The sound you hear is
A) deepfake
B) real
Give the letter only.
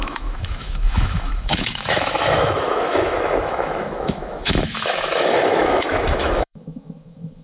A